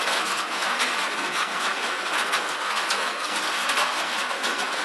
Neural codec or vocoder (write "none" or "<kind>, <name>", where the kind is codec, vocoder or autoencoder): codec, SNAC